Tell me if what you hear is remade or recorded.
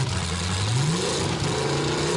recorded